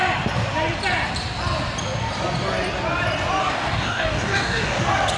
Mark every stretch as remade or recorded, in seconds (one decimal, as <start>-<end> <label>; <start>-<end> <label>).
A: 0.0-3.4 recorded; 3.4-4.8 remade; 4.8-5.2 recorded

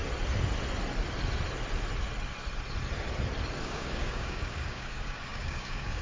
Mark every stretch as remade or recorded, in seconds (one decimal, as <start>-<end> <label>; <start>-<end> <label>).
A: 0.0-3.6 recorded; 3.6-6.0 remade

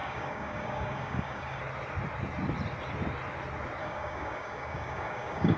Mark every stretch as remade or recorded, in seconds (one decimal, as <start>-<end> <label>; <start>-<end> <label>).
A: 0.0-1.6 remade; 1.6-3.8 recorded; 3.8-5.6 remade

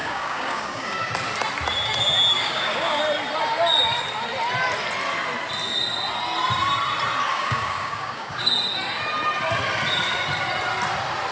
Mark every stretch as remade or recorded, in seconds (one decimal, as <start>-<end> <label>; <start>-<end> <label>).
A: 0.0-1.1 remade; 1.1-2.4 recorded; 2.4-3.0 remade; 3.0-7.3 recorded; 7.3-8.5 remade; 8.5-11.3 recorded